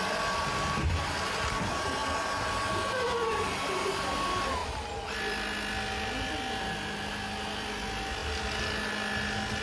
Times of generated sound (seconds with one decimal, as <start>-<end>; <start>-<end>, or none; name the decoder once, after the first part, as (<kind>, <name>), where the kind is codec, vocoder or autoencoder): none